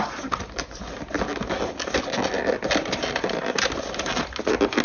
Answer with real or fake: real